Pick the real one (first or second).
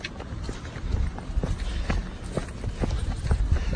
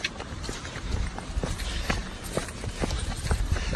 first